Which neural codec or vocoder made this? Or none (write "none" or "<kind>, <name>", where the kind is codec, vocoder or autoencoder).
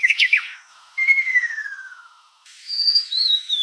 autoencoder, DAC-VAE